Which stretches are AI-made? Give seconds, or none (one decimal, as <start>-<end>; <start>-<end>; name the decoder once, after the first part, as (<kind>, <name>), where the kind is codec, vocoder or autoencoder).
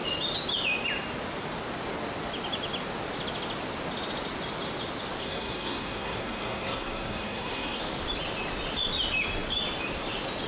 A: 5.2-7.8 (codec, SNAC)